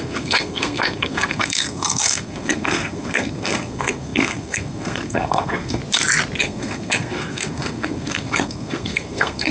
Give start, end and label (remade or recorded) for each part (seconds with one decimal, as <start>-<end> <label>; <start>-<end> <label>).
0.0-5.8 remade; 5.8-6.4 recorded; 6.4-9.5 remade

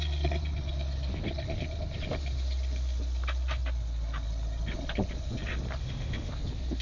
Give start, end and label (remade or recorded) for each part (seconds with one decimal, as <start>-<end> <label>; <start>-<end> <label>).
0.0-5.8 recorded; 5.8-6.3 remade; 6.3-6.8 recorded

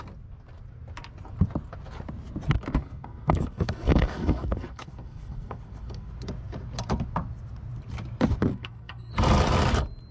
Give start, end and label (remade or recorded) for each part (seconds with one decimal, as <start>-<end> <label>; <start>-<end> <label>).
0.0-2.8 recorded; 2.8-6.1 remade; 6.1-8.5 recorded; 8.5-9.1 remade; 9.1-10.1 recorded

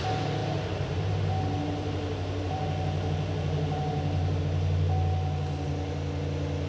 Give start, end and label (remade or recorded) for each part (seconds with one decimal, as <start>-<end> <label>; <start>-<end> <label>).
0.0-0.4 recorded; 0.4-4.4 remade; 4.4-6.7 recorded